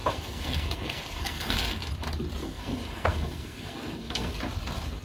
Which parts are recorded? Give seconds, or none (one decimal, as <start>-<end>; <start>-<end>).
1.9-2.4; 4.4-5.0